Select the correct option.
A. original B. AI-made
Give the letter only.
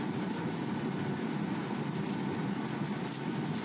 A